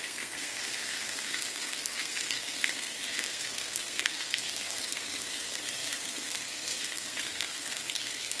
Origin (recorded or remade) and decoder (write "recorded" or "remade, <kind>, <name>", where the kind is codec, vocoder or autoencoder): remade, codec, SNAC